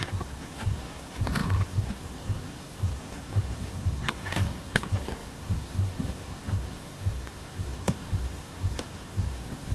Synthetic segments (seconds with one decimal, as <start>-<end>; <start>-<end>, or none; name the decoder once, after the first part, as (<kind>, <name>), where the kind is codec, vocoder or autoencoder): 0.0-9.7 (codec, SNAC)